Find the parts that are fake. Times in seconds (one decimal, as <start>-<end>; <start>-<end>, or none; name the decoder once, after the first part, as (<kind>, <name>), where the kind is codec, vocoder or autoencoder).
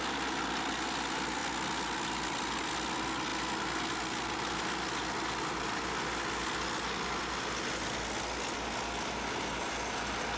none